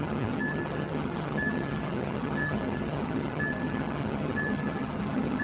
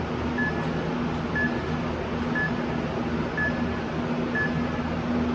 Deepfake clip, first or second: first